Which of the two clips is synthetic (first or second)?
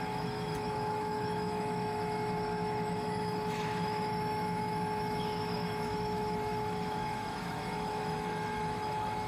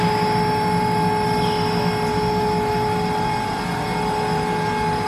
first